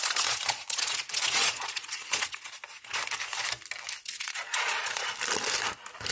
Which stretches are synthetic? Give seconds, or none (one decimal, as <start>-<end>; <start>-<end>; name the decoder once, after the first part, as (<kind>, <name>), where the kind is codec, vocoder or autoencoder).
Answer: 0.0-3.0 (vocoder, Vocos); 4.0-5.1